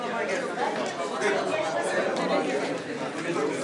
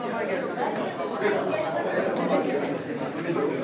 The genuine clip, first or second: first